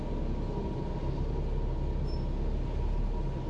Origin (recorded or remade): recorded